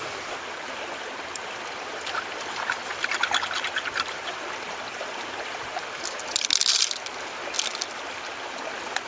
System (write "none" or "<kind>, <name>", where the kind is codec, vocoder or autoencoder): none